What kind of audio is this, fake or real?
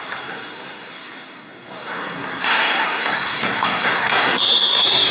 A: fake